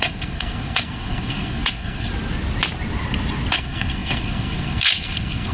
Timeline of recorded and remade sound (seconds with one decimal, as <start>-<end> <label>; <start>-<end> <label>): 0.0-2.1 remade; 2.1-3.5 recorded; 3.5-5.5 remade